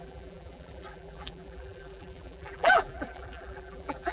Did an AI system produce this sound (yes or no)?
yes